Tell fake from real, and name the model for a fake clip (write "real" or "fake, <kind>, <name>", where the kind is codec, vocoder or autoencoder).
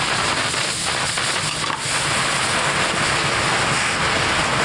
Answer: real